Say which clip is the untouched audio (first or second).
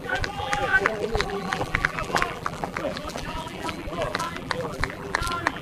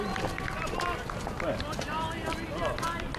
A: second